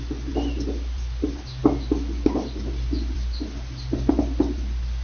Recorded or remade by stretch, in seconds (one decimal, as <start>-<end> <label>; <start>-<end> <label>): 0.0-5.0 recorded